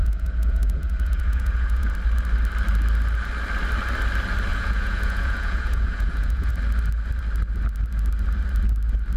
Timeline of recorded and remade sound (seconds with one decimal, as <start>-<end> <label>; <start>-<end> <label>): 0.0-1.9 remade; 1.9-4.5 recorded; 4.5-6.5 remade; 6.5-9.2 recorded